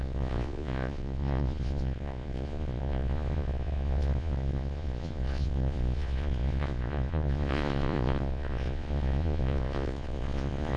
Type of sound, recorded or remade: remade